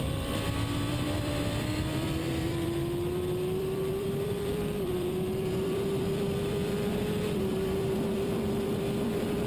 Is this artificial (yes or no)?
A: yes